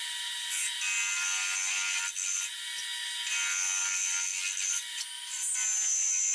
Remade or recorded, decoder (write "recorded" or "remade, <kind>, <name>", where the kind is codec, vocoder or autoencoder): recorded